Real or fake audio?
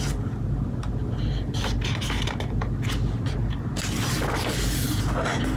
real